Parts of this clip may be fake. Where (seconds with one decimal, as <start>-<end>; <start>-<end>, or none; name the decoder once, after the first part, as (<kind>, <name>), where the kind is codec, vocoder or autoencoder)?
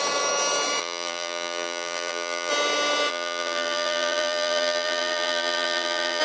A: 0.8-2.5 (vocoder, BigVGAN v2); 3.1-6.2